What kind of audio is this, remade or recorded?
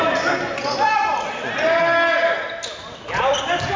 recorded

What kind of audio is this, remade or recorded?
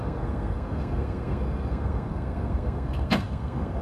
remade